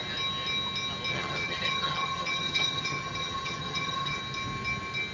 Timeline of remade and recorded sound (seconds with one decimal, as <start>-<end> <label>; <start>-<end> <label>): 0.0-1.1 recorded; 1.1-4.2 remade; 4.2-5.1 recorded